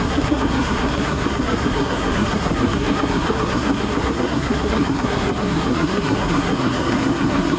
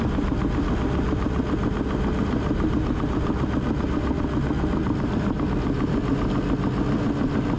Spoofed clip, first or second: first